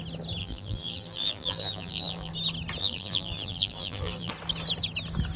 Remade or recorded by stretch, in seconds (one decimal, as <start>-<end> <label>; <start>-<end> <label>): 0.0-0.4 recorded; 0.4-2.3 remade; 2.3-2.8 recorded; 2.8-4.3 remade; 4.3-5.4 recorded